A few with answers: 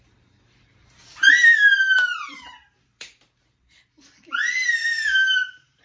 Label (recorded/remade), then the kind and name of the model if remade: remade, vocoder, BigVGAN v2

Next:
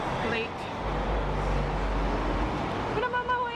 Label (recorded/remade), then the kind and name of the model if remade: recorded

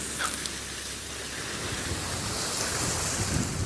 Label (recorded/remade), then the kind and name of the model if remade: recorded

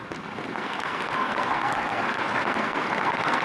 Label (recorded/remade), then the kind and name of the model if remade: remade, codec, SNAC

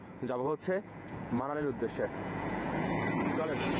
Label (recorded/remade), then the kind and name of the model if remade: remade, vocoder, Vocos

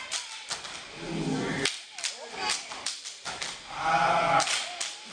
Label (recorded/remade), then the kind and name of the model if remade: recorded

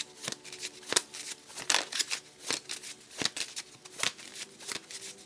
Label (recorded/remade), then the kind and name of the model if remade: recorded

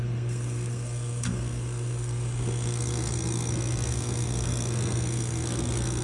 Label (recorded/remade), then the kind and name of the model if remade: remade, codec, SNAC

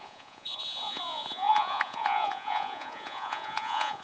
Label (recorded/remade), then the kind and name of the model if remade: remade, vocoder, Vocos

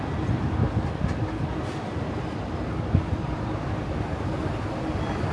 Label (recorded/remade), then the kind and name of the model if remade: recorded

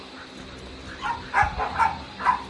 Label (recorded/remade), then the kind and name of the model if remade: recorded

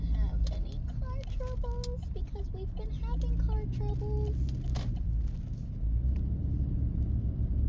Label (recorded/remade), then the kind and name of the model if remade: recorded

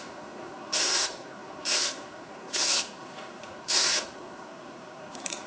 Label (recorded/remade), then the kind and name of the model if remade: remade, codec, SNAC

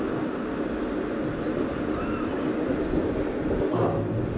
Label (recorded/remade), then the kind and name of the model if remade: recorded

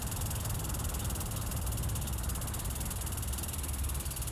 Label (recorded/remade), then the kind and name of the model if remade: recorded